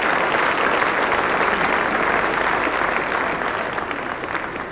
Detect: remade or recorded recorded